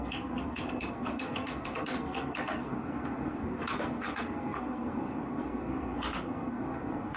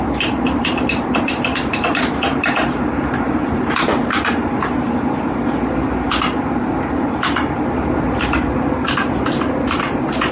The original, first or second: second